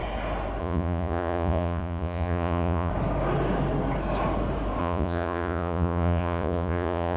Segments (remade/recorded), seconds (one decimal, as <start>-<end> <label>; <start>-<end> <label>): 0.0-0.6 recorded; 0.6-2.9 remade; 2.9-4.8 recorded; 4.8-7.2 remade